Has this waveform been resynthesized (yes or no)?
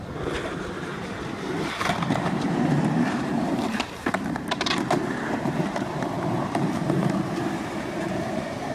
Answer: yes